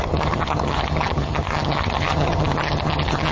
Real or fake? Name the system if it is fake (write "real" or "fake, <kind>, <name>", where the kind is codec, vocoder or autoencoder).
fake, vocoder, HiFi-GAN